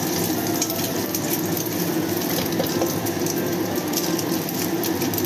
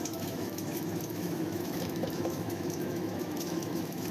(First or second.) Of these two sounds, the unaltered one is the first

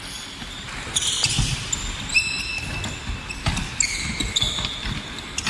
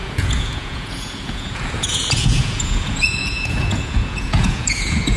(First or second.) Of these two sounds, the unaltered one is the first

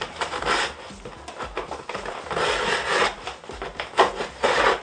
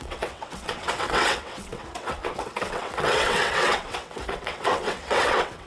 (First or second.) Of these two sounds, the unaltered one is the first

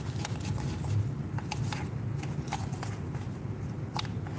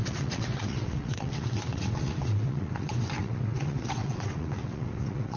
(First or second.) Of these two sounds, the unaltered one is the first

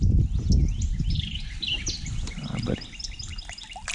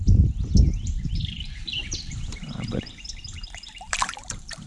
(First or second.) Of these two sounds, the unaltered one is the first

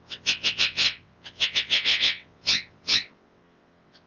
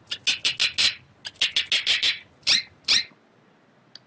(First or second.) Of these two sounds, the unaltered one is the second